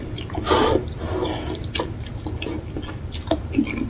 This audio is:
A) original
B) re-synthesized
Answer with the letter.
A